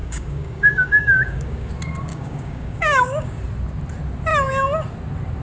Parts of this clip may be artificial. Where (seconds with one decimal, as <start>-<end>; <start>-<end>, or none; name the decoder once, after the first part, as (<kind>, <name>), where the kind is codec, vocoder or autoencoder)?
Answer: 0.0-1.7 (codec, DAC); 2.1-3.4